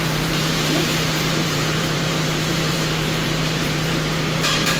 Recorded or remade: remade